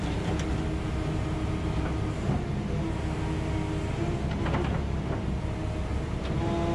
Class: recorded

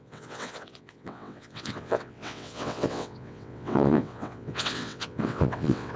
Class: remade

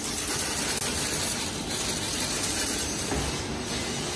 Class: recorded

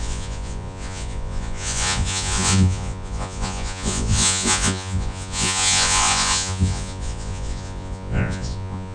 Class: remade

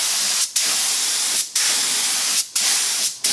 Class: remade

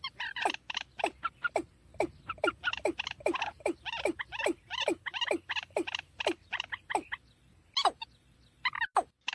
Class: recorded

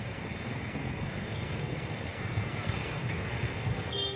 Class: remade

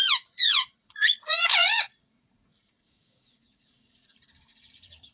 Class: remade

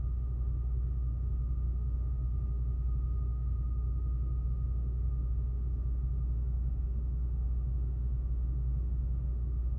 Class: remade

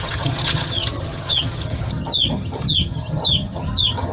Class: remade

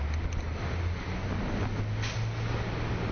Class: recorded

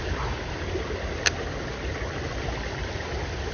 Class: recorded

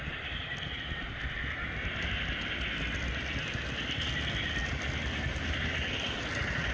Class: recorded